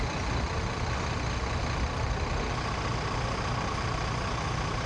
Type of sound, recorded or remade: recorded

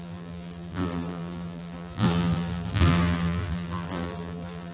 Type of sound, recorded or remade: remade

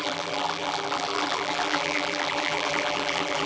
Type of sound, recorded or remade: remade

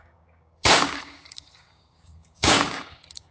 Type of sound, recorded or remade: remade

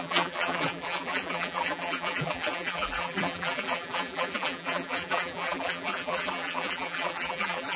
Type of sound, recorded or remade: remade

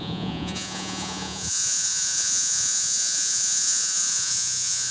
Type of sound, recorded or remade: remade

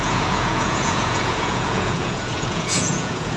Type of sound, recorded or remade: remade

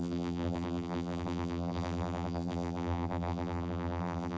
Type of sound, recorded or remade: remade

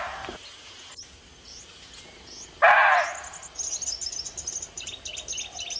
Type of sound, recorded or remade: recorded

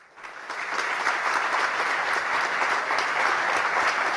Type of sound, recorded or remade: recorded